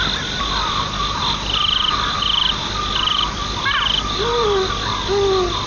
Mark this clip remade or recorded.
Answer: recorded